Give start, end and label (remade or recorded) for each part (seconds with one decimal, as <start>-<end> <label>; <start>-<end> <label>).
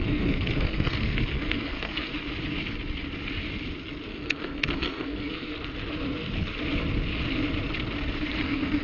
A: 0.0-2.1 remade; 2.1-4.1 recorded; 4.1-5.5 remade; 5.5-8.4 recorded; 8.4-8.8 remade